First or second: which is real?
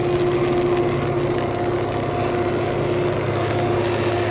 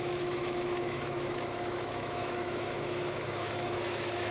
first